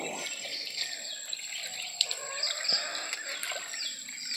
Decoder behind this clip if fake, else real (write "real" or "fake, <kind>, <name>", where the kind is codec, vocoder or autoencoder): real